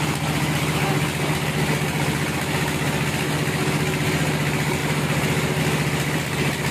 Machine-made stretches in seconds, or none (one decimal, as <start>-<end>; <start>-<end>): none

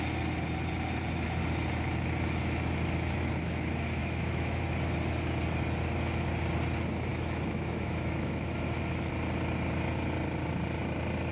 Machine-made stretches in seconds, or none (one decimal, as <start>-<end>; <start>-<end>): 4.0-4.6; 7.1-9.1